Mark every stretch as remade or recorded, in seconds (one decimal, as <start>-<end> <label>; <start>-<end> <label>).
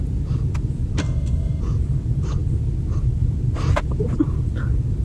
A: 0.0-1.0 recorded; 1.0-1.6 remade; 1.6-5.0 recorded